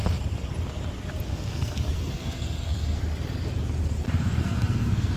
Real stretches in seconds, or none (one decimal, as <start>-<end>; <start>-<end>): 0.0-1.3; 3.0-4.4